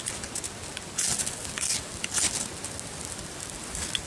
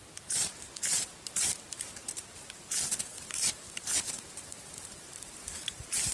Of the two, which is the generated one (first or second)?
second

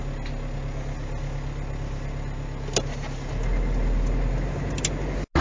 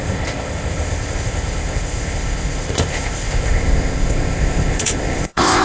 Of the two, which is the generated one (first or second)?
second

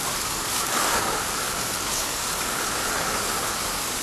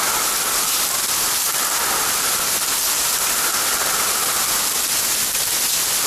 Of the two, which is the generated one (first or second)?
first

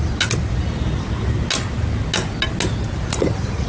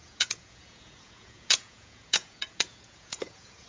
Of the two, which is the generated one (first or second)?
second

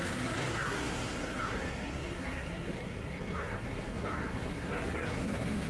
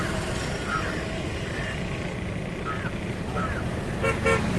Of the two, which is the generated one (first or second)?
first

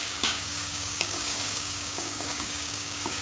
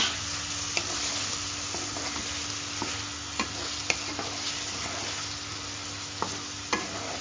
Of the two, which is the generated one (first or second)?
first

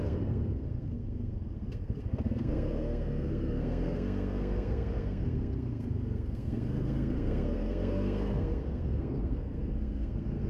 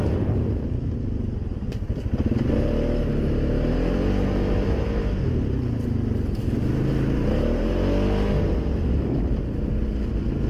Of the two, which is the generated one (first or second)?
first